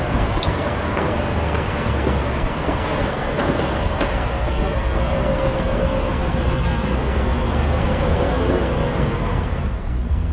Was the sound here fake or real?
fake